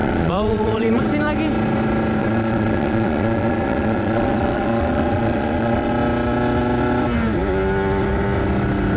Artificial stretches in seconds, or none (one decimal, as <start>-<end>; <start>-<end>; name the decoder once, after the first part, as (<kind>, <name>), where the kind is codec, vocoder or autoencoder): 0.0-1.0 (vocoder, Vocos); 2.2-5.9

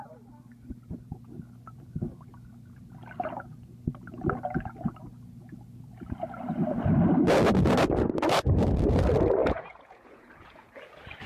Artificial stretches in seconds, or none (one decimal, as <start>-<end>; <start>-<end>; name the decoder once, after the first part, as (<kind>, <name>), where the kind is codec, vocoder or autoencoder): 9.4-10.7 (vocoder, Vocos)